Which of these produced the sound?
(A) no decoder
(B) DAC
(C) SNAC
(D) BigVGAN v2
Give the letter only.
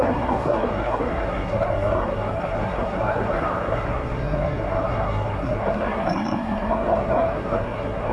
C